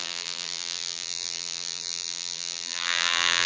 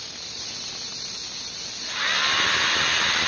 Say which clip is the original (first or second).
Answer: second